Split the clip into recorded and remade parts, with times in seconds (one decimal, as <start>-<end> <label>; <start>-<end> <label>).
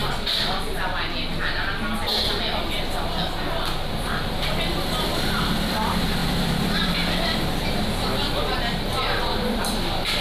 0.0-3.9 recorded; 3.9-10.2 remade